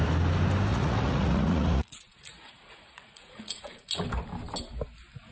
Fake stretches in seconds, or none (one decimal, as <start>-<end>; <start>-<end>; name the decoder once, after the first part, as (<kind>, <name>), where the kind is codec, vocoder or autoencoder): 0.7-3.9 (vocoder, Vocos)